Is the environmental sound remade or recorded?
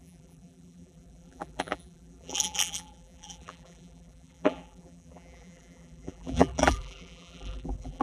remade